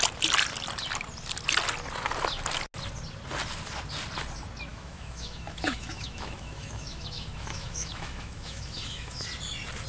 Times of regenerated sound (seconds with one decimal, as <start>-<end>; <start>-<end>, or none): 4.7-9.3